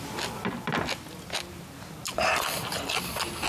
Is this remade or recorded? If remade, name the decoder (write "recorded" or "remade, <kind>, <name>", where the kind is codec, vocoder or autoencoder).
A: recorded